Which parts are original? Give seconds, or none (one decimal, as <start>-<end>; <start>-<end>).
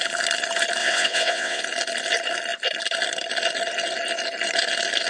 0.0-0.8; 1.6-5.1